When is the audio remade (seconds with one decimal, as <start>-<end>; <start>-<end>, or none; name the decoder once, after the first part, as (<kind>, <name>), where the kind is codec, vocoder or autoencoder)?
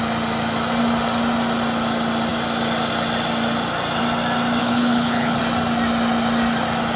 4.6-5.4 (codec, HILCodec)